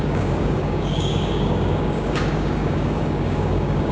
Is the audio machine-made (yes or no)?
yes